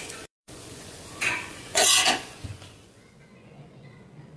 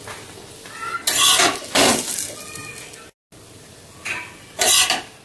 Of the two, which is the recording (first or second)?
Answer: second